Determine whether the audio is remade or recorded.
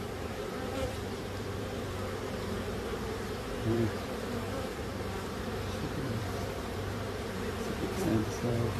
remade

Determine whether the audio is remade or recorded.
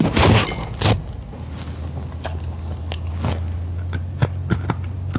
recorded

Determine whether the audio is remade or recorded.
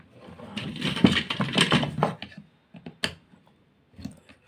recorded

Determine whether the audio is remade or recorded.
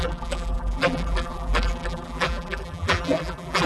remade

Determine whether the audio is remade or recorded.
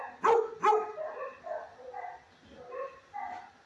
recorded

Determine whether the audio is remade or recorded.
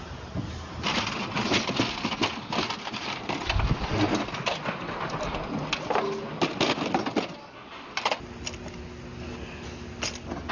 recorded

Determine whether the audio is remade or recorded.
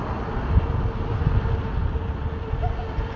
recorded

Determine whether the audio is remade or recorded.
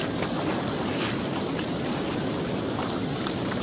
recorded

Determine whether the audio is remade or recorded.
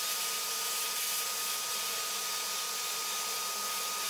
recorded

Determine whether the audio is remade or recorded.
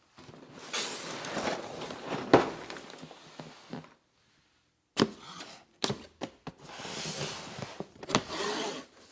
recorded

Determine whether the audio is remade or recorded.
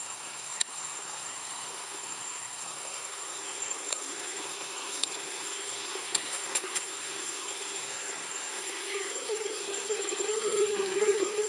remade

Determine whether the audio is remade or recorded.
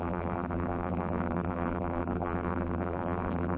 remade